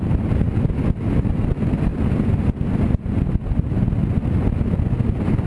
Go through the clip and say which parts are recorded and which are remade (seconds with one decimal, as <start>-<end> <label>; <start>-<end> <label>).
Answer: 0.0-5.5 recorded